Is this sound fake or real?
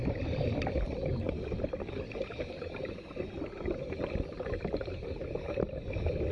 real